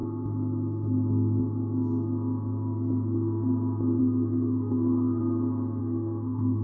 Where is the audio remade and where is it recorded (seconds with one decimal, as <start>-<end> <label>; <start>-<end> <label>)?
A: 0.0-4.0 recorded; 4.0-5.2 remade; 5.2-5.8 recorded; 5.8-6.6 remade